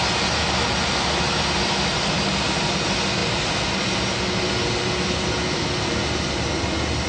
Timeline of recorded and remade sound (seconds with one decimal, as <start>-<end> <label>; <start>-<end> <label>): 0.0-7.1 recorded